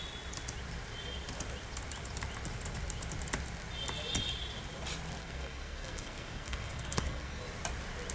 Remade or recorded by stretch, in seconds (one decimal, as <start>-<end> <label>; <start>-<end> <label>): 0.0-5.2 recorded; 5.2-7.4 remade; 7.4-8.1 recorded